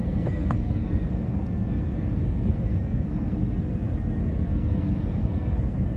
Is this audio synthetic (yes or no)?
yes